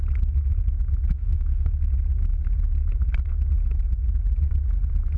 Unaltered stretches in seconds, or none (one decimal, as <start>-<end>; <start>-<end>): 0.0-1.1; 1.7-5.2